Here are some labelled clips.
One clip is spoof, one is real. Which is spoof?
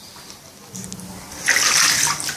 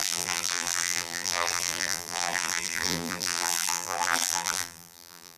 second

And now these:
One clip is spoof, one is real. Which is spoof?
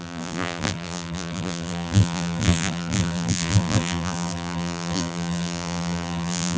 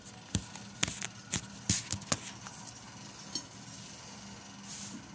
first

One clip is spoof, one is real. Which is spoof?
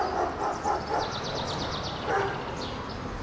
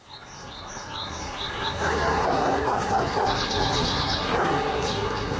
second